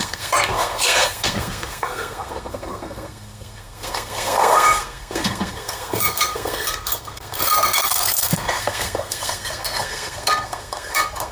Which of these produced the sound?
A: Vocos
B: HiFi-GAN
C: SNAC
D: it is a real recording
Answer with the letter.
C